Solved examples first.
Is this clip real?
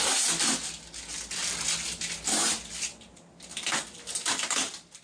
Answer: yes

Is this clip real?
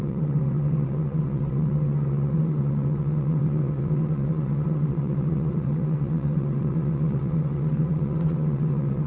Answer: no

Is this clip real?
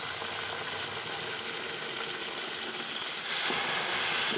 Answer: yes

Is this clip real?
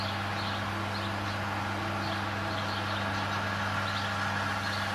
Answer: yes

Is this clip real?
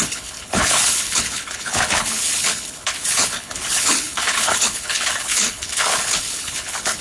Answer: no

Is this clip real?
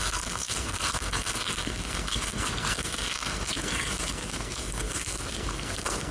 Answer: no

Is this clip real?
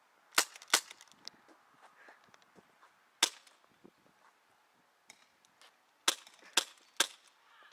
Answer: yes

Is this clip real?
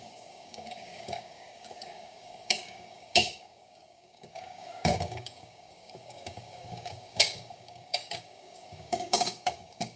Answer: no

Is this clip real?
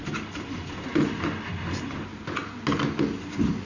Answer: yes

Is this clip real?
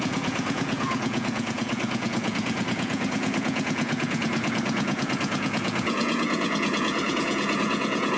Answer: no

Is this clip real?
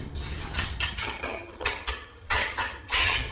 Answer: no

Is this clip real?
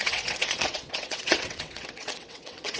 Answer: no